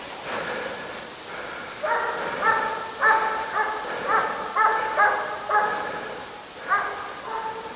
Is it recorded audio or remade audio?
recorded